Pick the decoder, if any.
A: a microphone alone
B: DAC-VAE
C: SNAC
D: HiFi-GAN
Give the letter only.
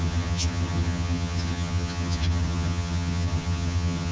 D